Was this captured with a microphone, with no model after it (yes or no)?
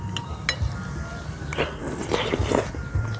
yes